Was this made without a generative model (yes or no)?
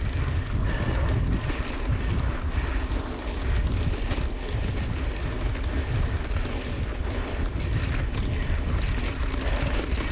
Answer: yes